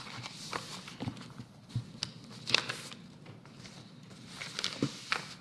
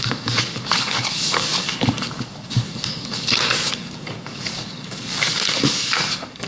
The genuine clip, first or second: first